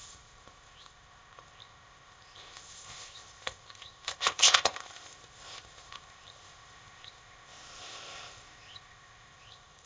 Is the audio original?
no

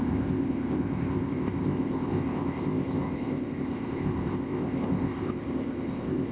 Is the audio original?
no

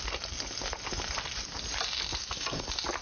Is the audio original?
yes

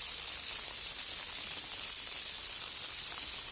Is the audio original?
yes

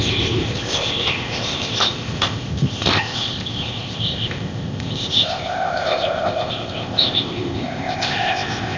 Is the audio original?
no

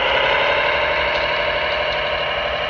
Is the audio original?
yes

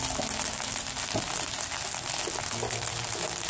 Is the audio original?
yes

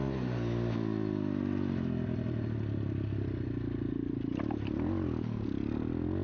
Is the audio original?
yes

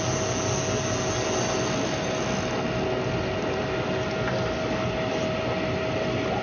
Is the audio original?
yes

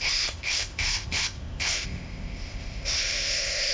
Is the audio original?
no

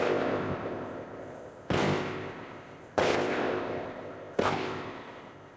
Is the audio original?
no